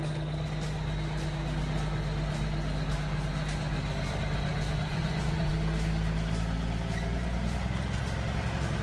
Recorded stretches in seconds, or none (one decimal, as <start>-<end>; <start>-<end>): 0.0-4.9; 5.5-8.8